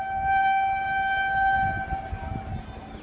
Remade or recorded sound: recorded